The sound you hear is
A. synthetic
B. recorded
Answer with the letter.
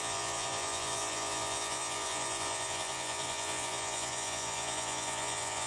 A